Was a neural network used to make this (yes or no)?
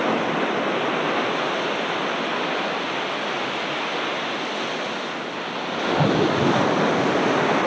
no